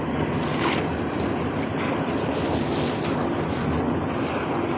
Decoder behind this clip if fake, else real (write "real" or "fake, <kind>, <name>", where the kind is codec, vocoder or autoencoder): real